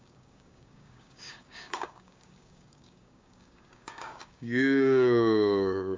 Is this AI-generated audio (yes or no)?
yes